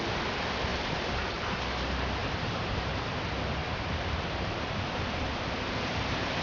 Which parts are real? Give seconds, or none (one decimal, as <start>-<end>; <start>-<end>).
0.0-0.7; 1.7-2.2; 3.1-3.6; 4.9-6.4